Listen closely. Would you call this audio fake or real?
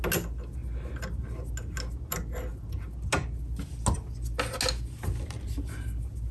real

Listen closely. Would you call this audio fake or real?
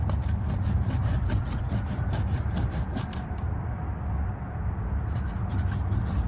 real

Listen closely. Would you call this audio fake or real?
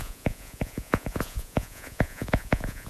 fake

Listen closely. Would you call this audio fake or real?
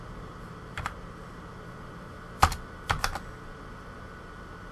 fake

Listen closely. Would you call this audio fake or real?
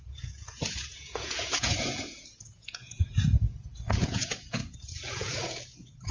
fake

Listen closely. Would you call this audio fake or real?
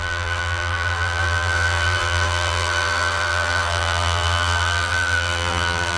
fake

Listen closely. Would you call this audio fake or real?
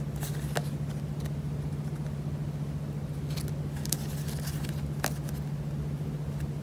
real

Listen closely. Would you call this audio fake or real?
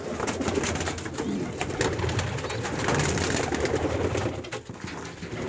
real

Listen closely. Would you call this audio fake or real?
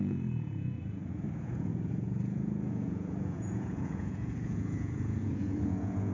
fake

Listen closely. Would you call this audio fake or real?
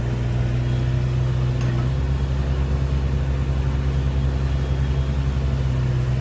real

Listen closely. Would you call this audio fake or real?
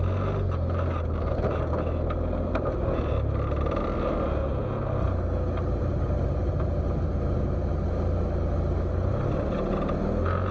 real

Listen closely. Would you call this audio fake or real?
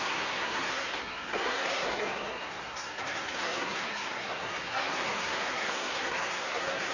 fake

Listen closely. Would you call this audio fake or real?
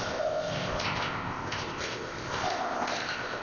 fake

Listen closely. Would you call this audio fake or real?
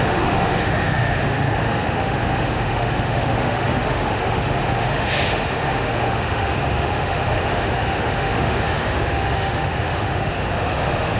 fake